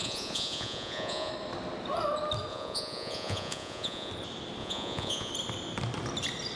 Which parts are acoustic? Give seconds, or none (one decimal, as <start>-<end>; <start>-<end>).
1.3-2.5; 4.1-4.6; 5.3-6.6